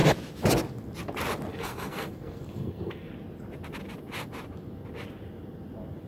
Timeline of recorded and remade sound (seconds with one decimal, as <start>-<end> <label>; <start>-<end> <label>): 0.0-1.5 recorded; 1.5-3.1 remade; 3.1-6.1 recorded